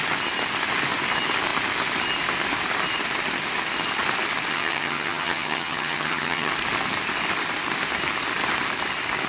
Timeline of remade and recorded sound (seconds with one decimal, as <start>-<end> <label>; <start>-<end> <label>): 0.0-4.5 recorded; 4.5-6.5 remade; 6.5-9.3 recorded